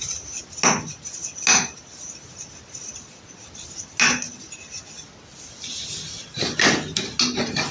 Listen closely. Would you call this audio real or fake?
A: real